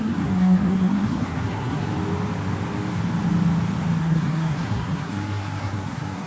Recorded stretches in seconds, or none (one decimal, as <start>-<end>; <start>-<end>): 1.9-4.0